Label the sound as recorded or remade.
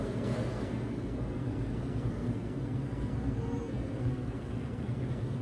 remade